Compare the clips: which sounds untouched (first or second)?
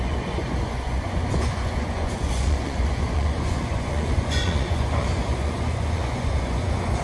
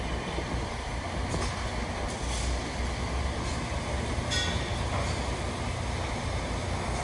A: second